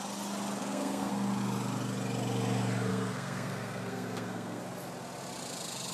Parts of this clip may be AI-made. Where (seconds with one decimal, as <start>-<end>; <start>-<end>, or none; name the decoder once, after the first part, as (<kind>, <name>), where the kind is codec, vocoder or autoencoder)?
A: 0.6-1.1 (codec, SNAC); 2.9-4.6